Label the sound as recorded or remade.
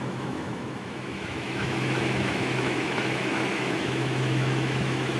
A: remade